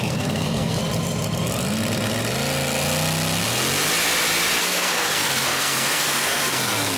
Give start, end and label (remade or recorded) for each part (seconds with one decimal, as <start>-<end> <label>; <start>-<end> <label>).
0.0-0.8 remade; 0.8-4.6 recorded; 4.6-7.0 remade